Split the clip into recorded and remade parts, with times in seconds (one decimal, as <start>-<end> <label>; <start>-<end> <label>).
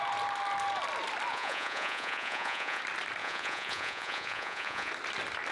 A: 0.0-1.3 recorded; 1.3-2.8 remade; 2.8-3.2 recorded; 3.2-4.9 remade; 4.9-5.5 recorded